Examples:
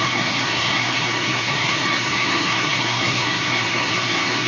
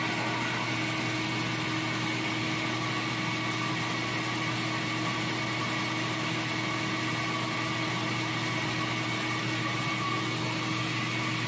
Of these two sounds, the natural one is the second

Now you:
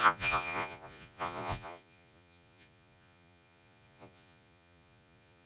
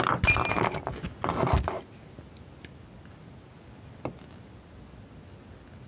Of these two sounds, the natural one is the second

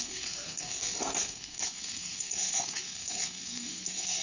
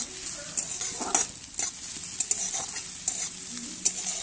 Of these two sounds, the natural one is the second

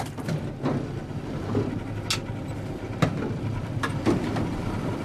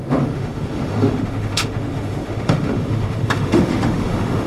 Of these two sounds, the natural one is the first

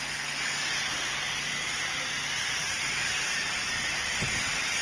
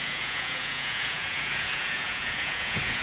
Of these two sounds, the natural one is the first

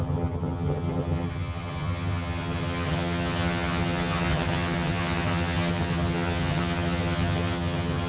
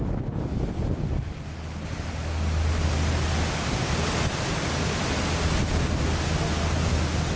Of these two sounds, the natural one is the second